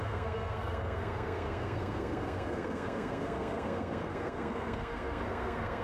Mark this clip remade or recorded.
remade